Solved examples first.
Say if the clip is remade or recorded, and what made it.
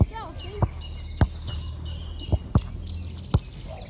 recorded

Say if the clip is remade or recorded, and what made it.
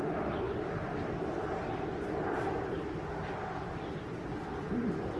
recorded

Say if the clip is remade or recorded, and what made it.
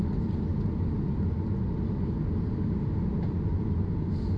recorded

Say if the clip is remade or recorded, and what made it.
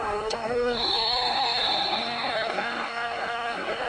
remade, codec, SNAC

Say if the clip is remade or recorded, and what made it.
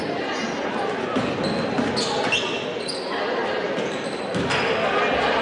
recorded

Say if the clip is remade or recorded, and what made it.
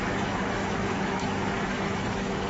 remade, autoencoder, DAC-VAE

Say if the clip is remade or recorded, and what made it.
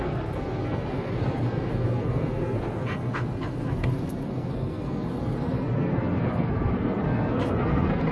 remade, codec, SNAC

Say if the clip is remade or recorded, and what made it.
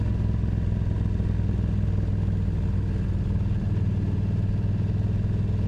recorded